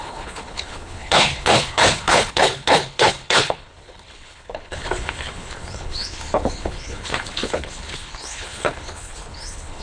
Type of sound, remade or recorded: remade